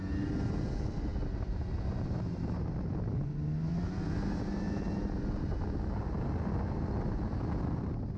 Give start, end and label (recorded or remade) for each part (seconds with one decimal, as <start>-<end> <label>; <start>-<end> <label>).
0.0-8.2 recorded